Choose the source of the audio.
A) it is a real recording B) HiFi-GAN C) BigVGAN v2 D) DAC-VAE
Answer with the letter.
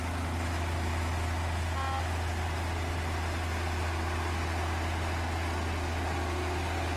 A